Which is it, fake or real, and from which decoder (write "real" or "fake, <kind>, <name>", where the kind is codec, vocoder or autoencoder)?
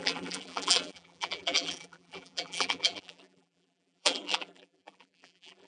fake, vocoder, BigVGAN v2